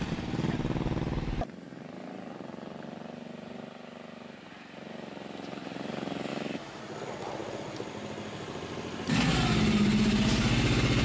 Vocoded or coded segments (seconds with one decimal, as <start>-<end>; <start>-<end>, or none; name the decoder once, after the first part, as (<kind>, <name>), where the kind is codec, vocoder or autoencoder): 6.3-6.8 (autoencoder, DAC-VAE)